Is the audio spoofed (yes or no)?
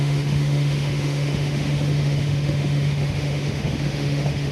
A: yes